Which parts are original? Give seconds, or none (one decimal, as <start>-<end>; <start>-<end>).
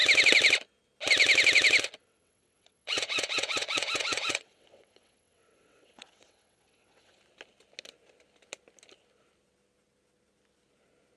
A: 0.0-2.0; 7.2-11.2